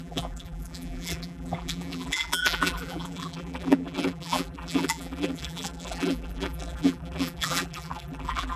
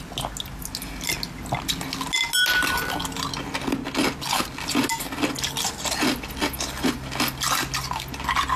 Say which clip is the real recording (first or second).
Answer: second